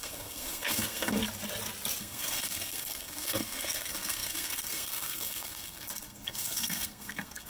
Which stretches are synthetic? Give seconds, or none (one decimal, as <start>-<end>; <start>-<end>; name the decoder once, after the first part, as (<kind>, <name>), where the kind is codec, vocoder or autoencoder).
0.0-1.2 (codec, SNAC); 2.0-7.5